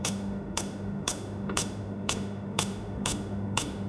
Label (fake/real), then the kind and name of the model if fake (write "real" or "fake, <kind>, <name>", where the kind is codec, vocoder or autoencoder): fake, autoencoder, DAC-VAE